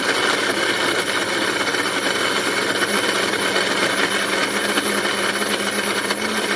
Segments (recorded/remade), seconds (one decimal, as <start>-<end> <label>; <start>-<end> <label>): 0.0-6.6 recorded